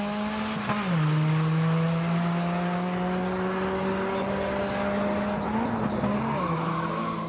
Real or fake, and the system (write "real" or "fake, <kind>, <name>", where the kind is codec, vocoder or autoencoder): real